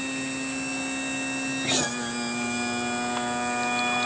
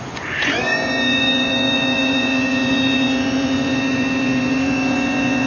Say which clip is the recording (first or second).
first